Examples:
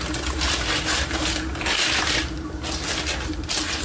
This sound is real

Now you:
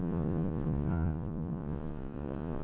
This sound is fake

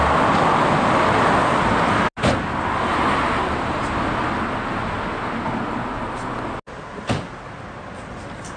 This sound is real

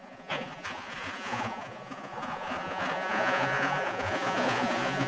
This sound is fake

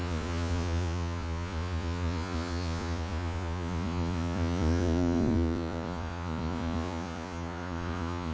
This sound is fake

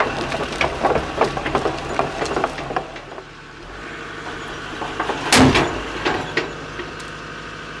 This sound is real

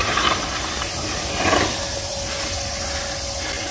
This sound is real